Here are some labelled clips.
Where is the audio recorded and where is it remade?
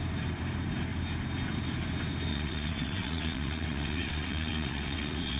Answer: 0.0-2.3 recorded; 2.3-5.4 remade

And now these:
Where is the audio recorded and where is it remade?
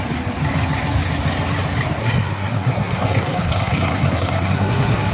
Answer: 0.0-2.0 recorded; 2.0-5.1 remade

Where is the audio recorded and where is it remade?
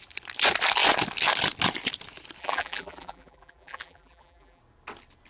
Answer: 0.0-2.4 recorded; 2.4-4.6 remade; 4.6-5.3 recorded